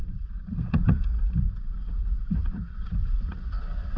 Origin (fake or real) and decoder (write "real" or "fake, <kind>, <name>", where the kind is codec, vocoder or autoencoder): fake, vocoder, Vocos